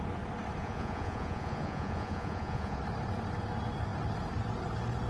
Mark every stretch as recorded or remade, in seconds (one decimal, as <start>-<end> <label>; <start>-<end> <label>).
0.0-0.6 recorded; 0.6-2.8 remade; 2.8-5.1 recorded